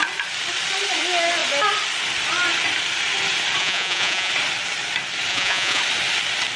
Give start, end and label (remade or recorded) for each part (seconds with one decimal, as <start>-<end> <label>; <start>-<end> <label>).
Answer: 0.0-3.6 recorded; 3.6-4.3 remade; 4.3-5.3 recorded; 5.3-5.8 remade; 5.8-6.6 recorded